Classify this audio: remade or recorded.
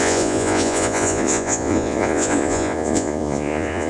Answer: remade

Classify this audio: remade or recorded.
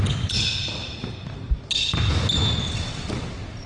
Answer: recorded